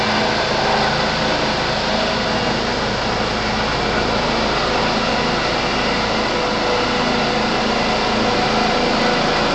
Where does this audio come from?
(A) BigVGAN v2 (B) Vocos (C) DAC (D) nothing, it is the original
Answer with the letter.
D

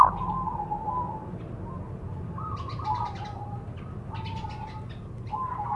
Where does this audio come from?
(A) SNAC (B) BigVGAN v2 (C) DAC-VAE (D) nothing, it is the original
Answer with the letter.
D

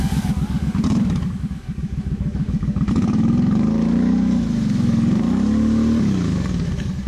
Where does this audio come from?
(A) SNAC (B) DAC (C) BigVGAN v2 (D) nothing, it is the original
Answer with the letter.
B